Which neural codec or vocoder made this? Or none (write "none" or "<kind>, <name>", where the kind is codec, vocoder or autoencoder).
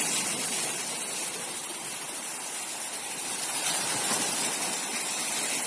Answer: none